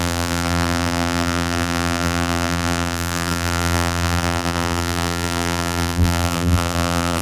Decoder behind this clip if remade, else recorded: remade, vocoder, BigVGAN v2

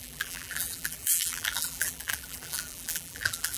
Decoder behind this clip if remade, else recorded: remade, vocoder, BigVGAN v2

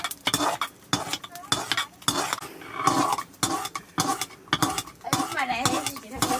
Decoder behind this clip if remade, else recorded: recorded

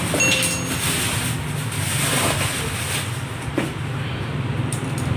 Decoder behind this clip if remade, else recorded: recorded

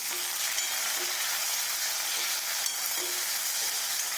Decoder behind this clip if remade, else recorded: recorded